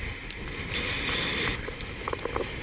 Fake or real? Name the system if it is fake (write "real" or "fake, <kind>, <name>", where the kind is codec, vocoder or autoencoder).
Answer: real